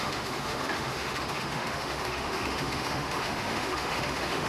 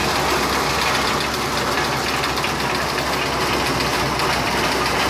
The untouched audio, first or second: second